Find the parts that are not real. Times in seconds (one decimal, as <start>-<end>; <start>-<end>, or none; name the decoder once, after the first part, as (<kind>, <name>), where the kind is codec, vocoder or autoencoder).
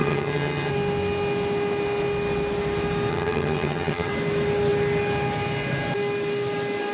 0.0-0.7 (vocoder, HiFi-GAN); 3.1-4.1